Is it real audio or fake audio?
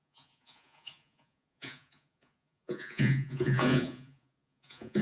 fake